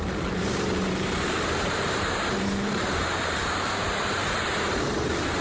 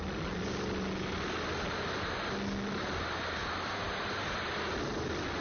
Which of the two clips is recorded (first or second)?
second